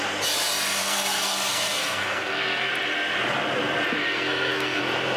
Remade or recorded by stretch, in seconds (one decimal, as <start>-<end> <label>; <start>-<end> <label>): 0.0-0.8 recorded; 0.8-2.7 remade; 2.7-4.0 recorded; 4.0-4.8 remade; 4.8-5.2 recorded